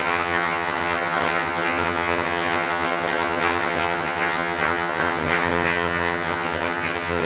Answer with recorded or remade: remade